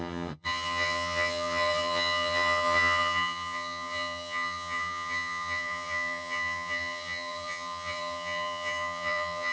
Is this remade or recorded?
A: remade